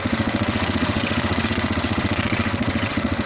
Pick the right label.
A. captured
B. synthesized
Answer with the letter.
B